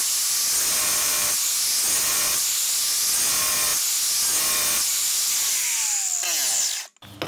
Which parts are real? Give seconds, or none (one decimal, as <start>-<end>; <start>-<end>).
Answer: 0.0-7.3